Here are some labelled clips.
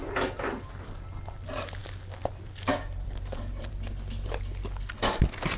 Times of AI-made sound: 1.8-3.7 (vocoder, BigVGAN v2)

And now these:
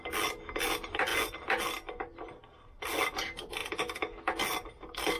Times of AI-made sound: none

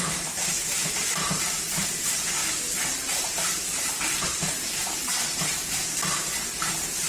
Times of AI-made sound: 0.0-6.1 (vocoder, BigVGAN v2); 6.6-7.1

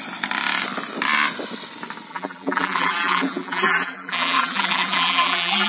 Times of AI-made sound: 2.1-5.7 (vocoder, BigVGAN v2)

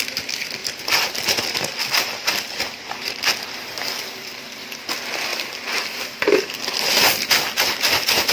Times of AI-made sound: 0.6-4.4 (vocoder, BigVGAN v2)